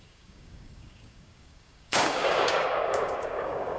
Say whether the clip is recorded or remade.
remade